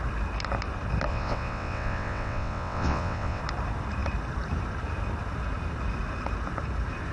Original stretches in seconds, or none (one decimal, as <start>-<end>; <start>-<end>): 0.0-1.1; 3.4-7.1

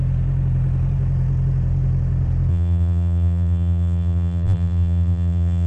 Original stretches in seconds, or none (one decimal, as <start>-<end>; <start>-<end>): 0.0-2.5

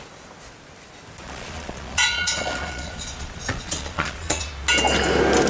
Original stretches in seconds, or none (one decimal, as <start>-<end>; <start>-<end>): 0.0-1.2; 4.5-5.5

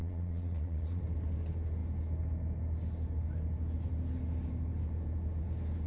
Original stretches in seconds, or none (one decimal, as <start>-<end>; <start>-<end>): 1.0-5.9

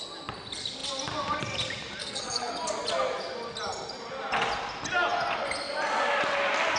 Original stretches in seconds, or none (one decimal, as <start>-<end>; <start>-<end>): 0.0-2.0; 2.5-6.8

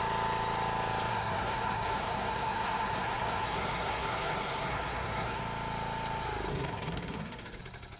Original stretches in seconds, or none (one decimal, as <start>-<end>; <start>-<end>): 0.0-1.1; 5.4-6.5; 7.6-8.0

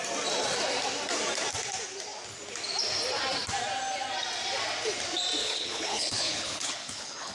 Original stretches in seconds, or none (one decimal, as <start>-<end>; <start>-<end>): 0.0-5.4

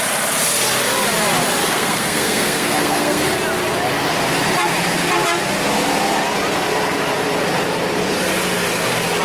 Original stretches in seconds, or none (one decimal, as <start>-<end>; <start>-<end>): 0.0-1.6; 3.2-9.2